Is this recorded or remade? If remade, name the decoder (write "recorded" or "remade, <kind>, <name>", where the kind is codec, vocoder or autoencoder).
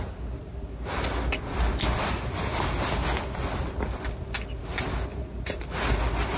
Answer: recorded